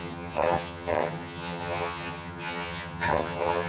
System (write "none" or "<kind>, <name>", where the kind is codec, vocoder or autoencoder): vocoder, HiFi-GAN